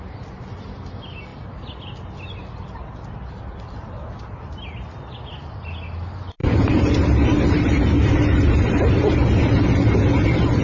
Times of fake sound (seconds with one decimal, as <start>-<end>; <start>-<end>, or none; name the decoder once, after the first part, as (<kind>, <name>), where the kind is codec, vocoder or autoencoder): 6.4-8.9 (vocoder, BigVGAN v2)